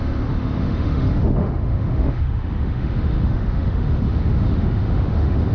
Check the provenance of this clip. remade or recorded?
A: remade